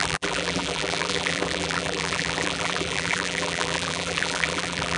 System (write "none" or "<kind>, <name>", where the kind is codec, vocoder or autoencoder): vocoder, BigVGAN v2